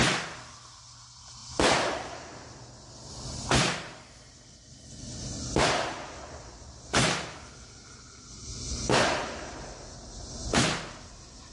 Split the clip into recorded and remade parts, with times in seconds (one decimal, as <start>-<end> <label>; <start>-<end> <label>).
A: 0.0-11.5 recorded